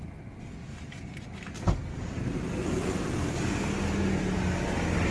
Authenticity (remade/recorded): recorded